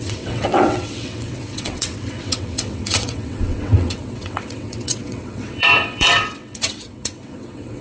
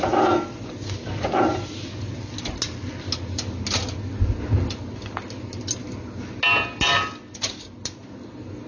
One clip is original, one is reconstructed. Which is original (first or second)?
second